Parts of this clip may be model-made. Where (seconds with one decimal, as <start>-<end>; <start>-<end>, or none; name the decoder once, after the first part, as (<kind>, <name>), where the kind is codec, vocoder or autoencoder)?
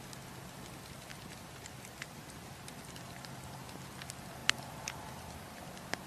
1.1-3.9 (vocoder, BigVGAN v2); 4.4-6.1